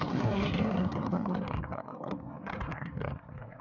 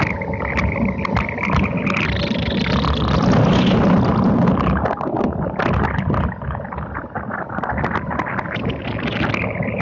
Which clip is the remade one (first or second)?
first